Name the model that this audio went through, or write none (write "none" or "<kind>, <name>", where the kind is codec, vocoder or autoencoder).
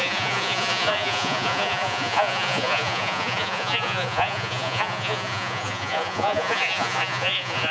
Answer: vocoder, Vocos